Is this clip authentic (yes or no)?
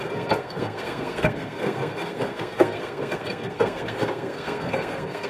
no